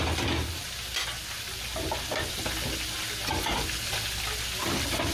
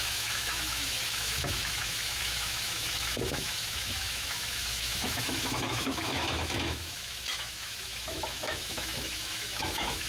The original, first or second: first